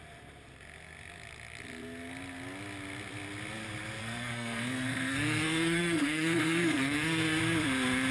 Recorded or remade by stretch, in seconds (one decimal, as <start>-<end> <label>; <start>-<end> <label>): 0.0-4.0 recorded; 4.0-7.4 remade; 7.4-8.1 recorded